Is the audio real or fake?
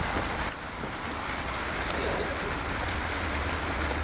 real